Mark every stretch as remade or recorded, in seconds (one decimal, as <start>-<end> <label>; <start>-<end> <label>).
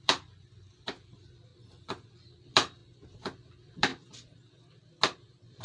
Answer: 0.0-1.5 remade; 1.5-2.1 recorded; 2.1-2.8 remade; 2.8-3.5 recorded; 3.5-3.9 remade; 3.9-5.6 recorded